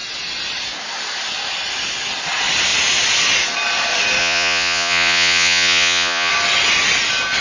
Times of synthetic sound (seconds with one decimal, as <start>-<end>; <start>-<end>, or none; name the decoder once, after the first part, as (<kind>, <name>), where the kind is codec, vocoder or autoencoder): 4.2-6.3 (vocoder, Vocos)